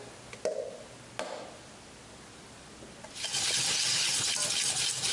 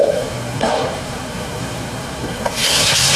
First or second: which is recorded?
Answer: first